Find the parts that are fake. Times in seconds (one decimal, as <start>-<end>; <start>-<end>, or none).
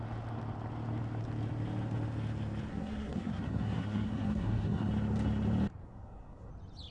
2.7-4.9; 5.8-6.5